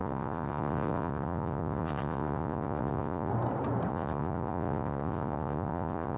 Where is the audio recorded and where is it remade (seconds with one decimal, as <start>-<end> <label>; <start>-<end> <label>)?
0.0-3.3 remade; 3.3-3.9 recorded; 3.9-6.2 remade